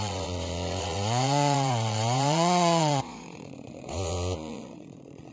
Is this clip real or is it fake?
fake